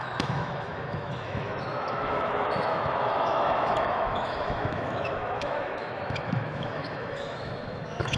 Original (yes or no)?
no